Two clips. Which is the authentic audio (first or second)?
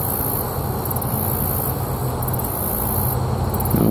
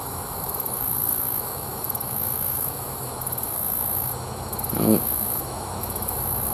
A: first